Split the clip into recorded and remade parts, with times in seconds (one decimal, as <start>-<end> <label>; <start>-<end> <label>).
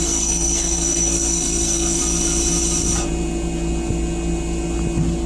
0.0-2.0 remade; 2.0-5.3 recorded